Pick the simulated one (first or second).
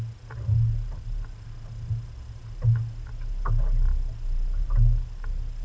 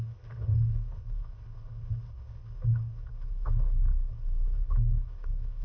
second